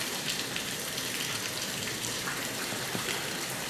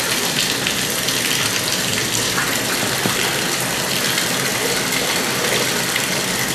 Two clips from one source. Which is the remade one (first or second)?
first